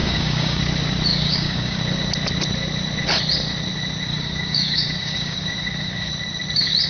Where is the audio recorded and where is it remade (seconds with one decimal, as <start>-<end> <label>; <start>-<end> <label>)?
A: 0.0-0.6 remade; 0.6-1.1 recorded; 1.1-1.8 remade; 1.8-4.1 recorded; 4.1-6.1 remade; 6.1-6.9 recorded